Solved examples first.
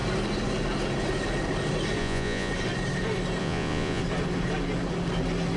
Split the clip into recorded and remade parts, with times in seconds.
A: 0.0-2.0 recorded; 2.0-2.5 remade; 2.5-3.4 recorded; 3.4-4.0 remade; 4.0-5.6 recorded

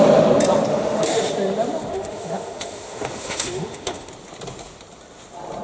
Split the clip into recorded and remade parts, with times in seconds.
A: 0.0-0.7 recorded; 0.7-1.3 remade; 1.3-1.9 recorded; 1.9-4.1 remade; 4.1-5.6 recorded

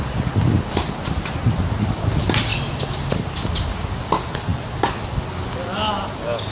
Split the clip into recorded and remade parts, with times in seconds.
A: 0.0-6.5 recorded

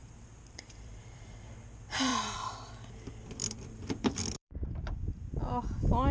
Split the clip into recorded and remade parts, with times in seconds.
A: 0.0-1.2 remade; 1.2-3.4 recorded; 3.4-4.8 remade; 4.8-6.1 recorded

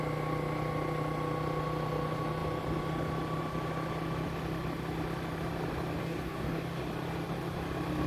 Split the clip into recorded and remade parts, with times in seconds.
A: 0.0-6.0 recorded; 6.0-6.8 remade; 6.8-8.1 recorded

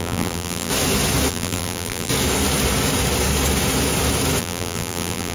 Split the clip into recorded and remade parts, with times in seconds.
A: 0.0-0.7 remade; 0.7-1.3 recorded; 1.3-2.1 remade; 2.1-4.4 recorded; 4.4-5.3 remade

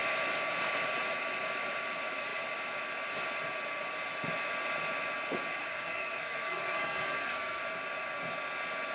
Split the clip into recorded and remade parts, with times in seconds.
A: 0.0-5.6 recorded; 5.6-7.6 remade; 7.6-8.9 recorded